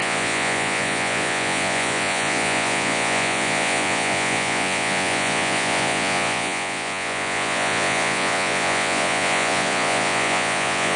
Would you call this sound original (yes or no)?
no